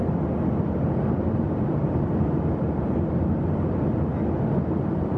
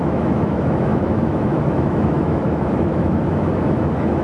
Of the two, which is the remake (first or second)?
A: second